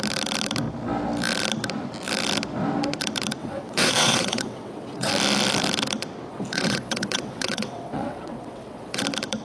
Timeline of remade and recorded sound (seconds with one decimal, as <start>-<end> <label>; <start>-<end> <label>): 0.0-3.4 recorded; 3.4-5.1 remade; 5.1-6.3 recorded; 6.3-9.0 remade; 9.0-9.4 recorded